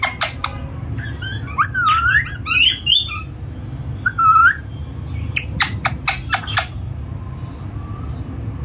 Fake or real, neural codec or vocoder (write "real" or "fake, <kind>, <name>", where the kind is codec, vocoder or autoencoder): real